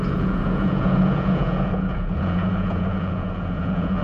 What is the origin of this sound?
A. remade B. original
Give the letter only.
A